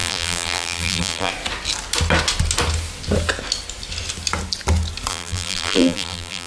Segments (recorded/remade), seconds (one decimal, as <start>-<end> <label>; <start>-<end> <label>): 0.0-1.3 remade; 1.3-5.1 recorded; 5.1-6.5 remade